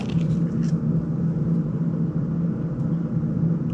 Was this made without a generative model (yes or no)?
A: yes